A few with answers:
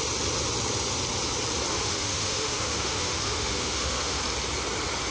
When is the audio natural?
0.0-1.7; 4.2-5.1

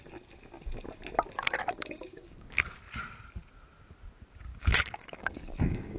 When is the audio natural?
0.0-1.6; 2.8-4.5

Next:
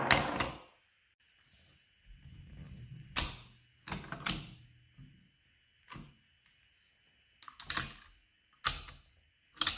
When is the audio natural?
0.0-9.8

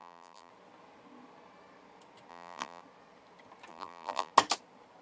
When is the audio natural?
0.5-2.3; 2.8-3.7; 4.3-5.0

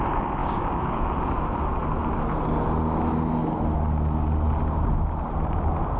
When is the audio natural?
0.0-0.4; 1.1-6.0

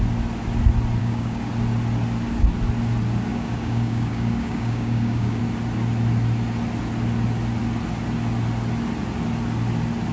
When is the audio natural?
0.0-1.0; 1.5-3.3; 5.4-10.1

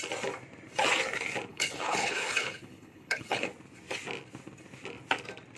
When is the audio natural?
0.0-1.5; 3.5-5.6